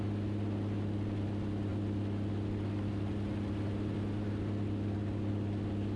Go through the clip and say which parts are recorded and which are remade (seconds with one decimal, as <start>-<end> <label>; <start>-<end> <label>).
0.0-6.0 recorded